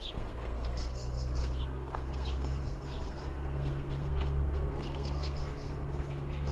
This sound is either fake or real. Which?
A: fake